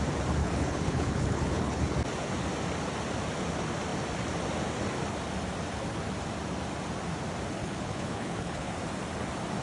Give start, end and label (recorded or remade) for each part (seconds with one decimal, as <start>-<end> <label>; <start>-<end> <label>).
0.0-0.4 recorded; 0.4-1.8 remade; 1.8-7.6 recorded; 7.6-8.7 remade; 8.7-9.6 recorded